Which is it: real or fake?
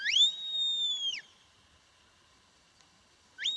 real